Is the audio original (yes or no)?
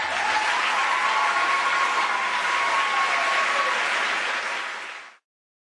yes